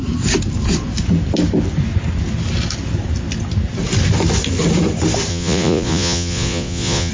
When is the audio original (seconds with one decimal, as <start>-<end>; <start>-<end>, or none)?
0.0-5.3